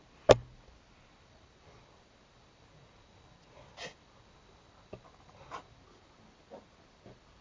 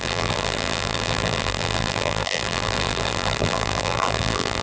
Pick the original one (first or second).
first